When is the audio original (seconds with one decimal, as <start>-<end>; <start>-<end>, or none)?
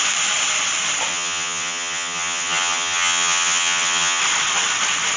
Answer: 0.0-1.1; 4.2-5.2